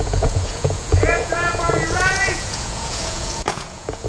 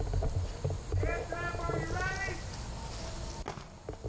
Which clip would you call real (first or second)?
second